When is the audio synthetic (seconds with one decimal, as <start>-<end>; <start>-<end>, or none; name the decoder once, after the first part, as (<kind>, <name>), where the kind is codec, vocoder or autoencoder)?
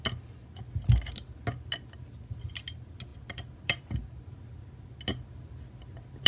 3.1-3.8 (vocoder, BigVGAN v2)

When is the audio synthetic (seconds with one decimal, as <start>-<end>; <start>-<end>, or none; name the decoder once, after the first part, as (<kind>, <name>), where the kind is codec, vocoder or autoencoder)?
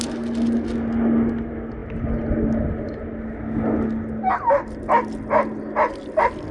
none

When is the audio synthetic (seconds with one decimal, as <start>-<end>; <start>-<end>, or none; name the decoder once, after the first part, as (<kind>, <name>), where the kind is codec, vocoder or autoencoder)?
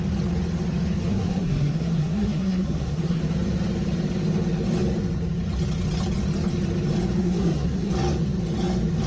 1.1-3.2 (codec, SNAC); 7.2-7.9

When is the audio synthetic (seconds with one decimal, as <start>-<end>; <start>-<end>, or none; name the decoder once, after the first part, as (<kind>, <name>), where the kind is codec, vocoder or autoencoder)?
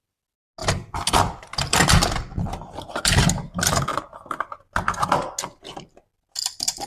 none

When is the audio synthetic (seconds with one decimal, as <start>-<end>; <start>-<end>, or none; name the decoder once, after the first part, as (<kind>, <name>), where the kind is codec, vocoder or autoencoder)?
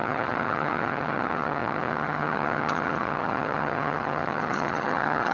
0.0-5.3 (vocoder, HiFi-GAN)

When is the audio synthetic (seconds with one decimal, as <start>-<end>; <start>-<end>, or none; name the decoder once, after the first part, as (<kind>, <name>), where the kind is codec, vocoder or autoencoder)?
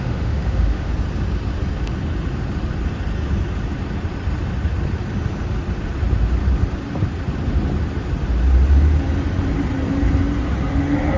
0.0-0.9 (autoencoder, DAC-VAE)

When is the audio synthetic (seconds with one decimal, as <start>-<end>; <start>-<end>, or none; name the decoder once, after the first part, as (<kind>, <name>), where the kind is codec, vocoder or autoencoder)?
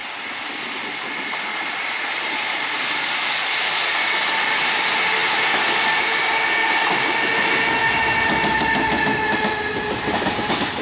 none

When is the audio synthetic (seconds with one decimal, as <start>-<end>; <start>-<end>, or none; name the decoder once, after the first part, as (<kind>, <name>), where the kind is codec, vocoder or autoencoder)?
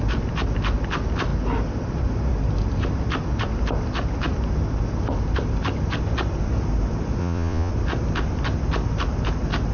7.2-7.7 (vocoder, Vocos)